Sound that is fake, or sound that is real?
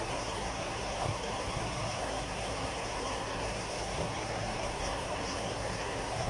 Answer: fake